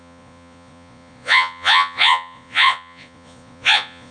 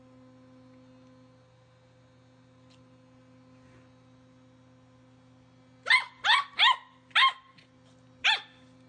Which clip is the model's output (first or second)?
first